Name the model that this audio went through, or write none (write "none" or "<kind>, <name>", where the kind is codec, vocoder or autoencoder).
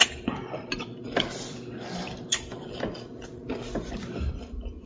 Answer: vocoder, BigVGAN v2